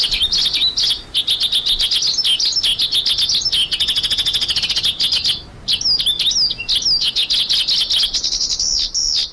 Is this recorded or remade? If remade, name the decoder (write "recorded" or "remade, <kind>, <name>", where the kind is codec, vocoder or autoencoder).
recorded